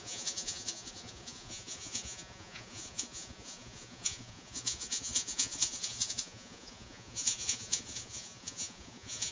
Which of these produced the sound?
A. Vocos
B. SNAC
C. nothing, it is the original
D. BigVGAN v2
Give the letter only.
A